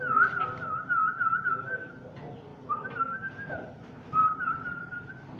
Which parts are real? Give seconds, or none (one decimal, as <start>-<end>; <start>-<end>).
0.0-2.5; 4.5-5.4